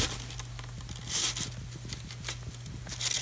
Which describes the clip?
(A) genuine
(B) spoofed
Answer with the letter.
A